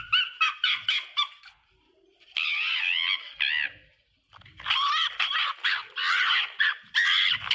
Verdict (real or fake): real